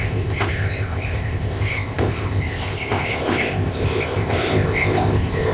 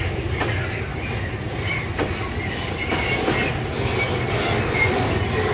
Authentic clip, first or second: second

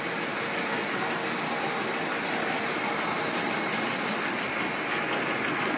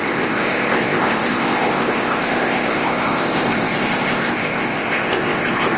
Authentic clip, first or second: first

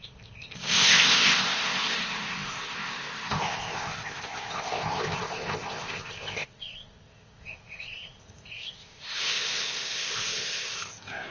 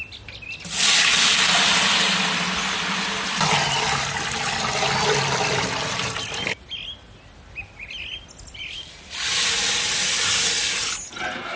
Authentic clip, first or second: second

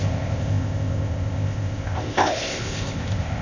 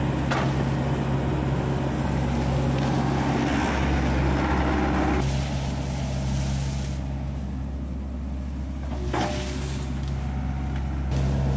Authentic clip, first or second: second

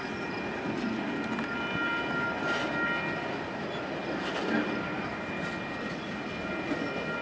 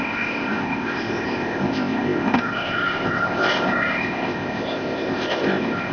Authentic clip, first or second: first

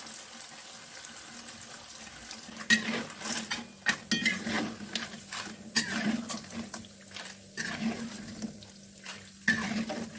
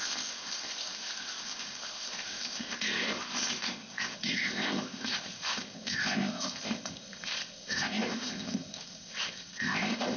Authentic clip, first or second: first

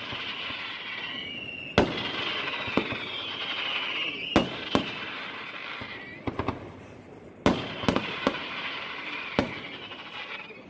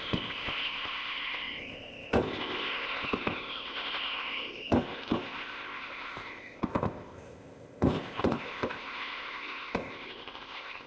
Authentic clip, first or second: first